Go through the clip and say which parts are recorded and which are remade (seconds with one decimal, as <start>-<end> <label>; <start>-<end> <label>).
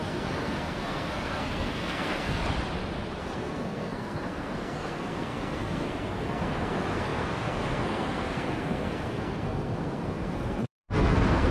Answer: 0.0-2.4 remade; 2.4-3.2 recorded; 3.2-11.5 remade